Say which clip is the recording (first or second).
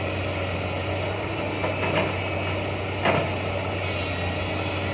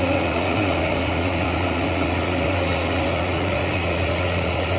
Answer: first